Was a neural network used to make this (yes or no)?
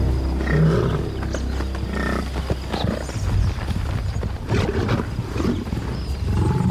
no